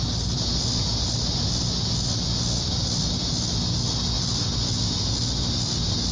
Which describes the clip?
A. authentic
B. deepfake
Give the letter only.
A